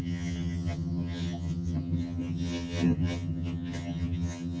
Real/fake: fake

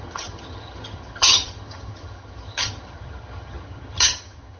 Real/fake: fake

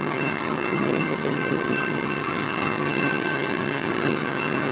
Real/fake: fake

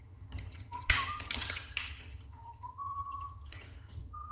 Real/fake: fake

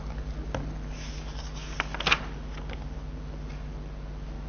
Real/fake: real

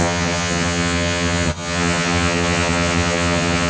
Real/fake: fake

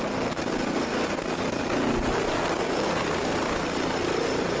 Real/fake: real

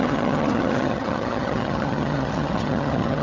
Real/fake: fake